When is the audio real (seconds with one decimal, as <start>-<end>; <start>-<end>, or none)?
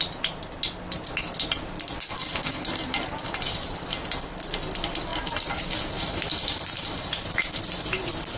0.0-2.8; 3.5-5.1; 7.6-8.4